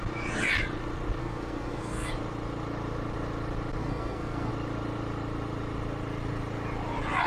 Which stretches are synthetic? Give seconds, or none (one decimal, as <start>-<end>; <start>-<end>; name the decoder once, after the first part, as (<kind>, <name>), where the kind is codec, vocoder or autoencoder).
1.2-2.1 (codec, SNAC); 3.8-4.5

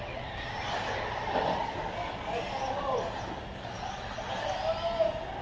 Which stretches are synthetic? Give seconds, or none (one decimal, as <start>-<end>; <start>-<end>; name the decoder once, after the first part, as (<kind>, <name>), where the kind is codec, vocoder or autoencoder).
none

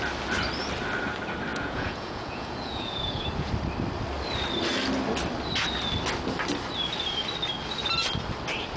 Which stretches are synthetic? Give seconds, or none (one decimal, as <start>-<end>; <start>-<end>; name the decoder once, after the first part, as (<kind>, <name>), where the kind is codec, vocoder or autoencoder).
1.5-3.5 (vocoder, Vocos)

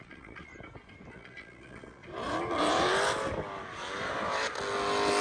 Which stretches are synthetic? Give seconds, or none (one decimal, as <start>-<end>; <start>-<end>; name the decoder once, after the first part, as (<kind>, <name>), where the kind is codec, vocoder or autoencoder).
0.0-0.5 (vocoder, Vocos); 1.1-2.0

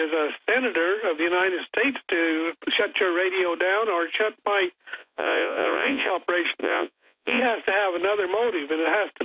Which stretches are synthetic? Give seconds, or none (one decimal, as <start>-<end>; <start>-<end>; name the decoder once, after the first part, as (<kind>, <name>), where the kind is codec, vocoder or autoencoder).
5.0-6.1 (vocoder, Vocos); 6.6-7.4

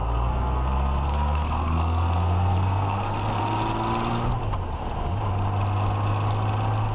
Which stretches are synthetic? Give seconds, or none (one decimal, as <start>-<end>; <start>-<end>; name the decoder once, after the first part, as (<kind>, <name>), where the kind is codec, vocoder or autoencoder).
0.0-3.4 (codec, SNAC)

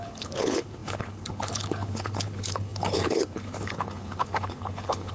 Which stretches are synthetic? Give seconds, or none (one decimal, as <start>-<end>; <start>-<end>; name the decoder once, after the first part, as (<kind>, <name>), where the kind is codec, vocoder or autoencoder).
0.0-5.1 (codec, HILCodec)

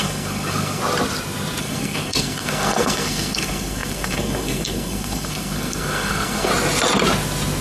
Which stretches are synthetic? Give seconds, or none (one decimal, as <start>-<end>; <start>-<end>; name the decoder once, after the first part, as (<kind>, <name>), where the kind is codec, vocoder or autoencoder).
0.0-0.8 (codec, SNAC); 1.6-6.5